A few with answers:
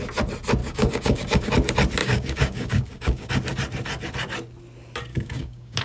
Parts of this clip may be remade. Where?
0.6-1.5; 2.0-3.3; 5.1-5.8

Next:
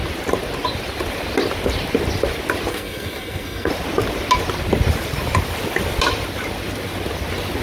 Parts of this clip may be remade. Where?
2.7-3.7

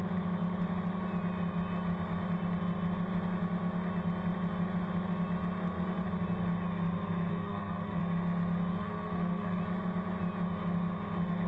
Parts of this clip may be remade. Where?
7.3-8.0; 8.8-9.6